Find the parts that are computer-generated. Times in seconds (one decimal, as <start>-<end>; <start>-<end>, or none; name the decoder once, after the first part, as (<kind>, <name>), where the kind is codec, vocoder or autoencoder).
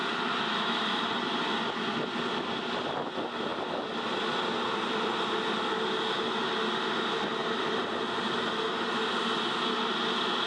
0.0-2.5 (vocoder, BigVGAN v2); 3.5-5.1; 7.4-8.0